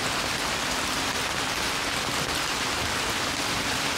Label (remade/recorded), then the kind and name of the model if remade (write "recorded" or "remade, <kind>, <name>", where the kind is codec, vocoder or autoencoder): recorded